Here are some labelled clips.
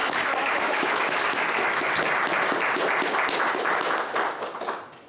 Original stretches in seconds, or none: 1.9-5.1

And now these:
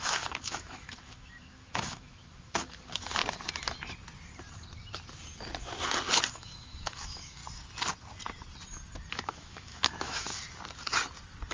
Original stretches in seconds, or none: 3.2-6.3; 7.4-9.1; 10.3-11.5